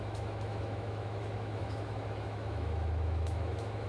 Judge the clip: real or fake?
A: fake